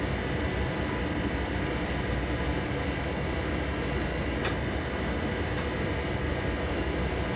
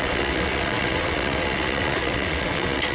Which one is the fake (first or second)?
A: second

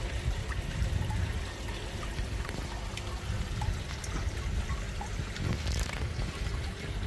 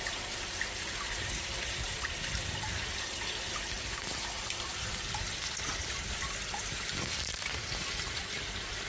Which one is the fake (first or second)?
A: second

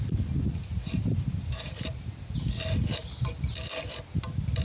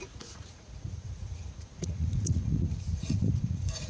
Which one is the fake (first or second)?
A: second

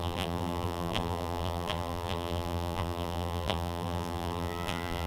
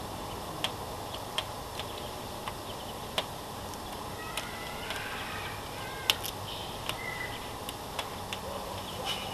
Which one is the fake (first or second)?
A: first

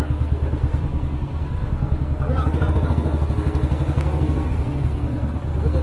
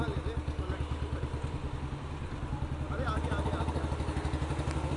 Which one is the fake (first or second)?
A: first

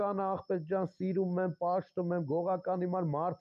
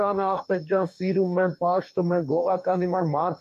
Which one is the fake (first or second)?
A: second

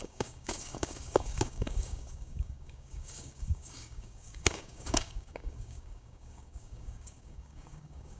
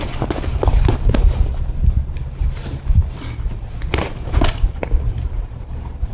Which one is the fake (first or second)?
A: first